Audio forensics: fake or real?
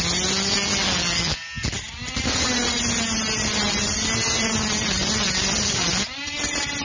real